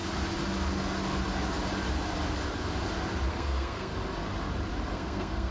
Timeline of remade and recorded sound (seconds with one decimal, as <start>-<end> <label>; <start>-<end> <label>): 0.0-3.3 recorded; 3.3-3.9 remade; 3.9-4.9 recorded; 4.9-5.5 remade